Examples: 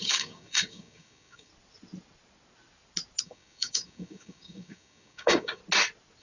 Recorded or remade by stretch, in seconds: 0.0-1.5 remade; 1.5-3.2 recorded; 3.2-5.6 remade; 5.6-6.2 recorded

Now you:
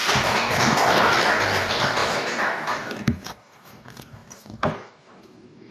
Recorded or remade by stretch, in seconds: 0.0-5.7 remade